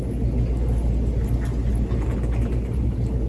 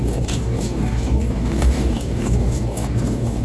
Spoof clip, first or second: second